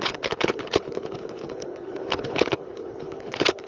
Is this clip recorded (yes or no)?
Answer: no